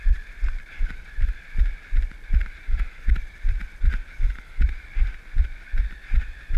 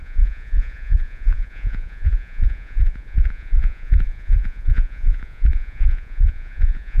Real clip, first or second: first